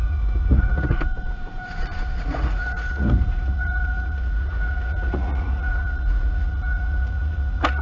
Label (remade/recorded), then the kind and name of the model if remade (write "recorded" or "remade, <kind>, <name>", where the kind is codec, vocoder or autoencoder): remade, vocoder, Vocos